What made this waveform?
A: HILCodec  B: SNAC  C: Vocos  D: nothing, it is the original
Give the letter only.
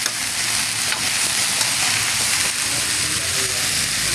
D